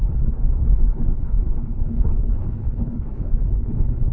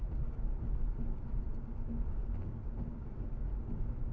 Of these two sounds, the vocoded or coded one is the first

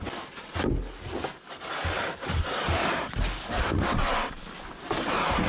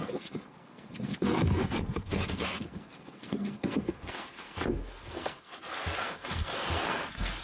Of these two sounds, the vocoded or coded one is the second